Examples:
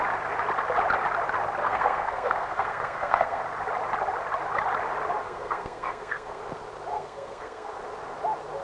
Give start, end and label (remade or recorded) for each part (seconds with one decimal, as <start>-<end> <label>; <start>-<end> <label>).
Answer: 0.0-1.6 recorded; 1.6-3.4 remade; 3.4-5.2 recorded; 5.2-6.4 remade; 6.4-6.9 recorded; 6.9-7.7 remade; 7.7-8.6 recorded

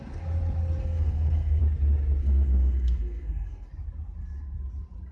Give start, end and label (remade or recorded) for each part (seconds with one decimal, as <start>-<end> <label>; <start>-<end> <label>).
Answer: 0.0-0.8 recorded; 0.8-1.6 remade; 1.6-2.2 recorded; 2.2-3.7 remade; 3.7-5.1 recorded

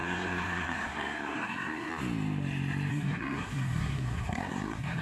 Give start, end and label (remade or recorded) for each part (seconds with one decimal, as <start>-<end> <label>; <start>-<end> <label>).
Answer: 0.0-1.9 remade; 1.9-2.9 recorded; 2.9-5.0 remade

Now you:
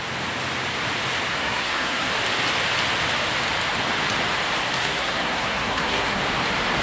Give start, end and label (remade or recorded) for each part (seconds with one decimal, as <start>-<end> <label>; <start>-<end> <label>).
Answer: 0.0-1.3 recorded; 1.3-2.1 remade; 2.1-4.8 recorded; 4.8-6.2 remade; 6.2-6.8 recorded